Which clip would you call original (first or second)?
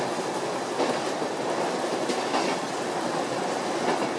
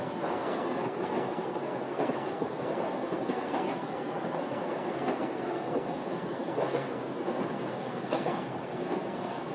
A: first